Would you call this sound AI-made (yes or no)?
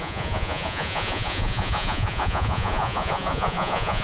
yes